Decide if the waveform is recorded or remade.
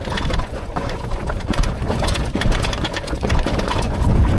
remade